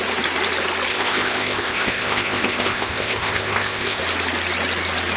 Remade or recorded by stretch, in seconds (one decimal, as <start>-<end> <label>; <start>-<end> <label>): 0.0-0.9 recorded; 0.9-4.0 remade; 4.0-5.2 recorded